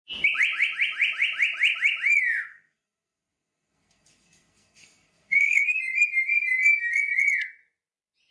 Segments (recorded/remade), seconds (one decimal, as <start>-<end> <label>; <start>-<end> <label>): 0.0-2.5 recorded; 2.5-5.8 remade; 5.8-8.3 recorded